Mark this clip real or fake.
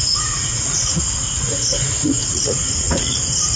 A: fake